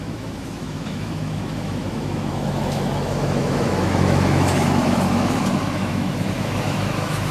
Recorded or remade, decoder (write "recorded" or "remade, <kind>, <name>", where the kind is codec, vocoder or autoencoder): remade, autoencoder, DAC-VAE